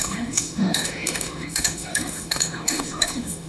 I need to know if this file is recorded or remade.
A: remade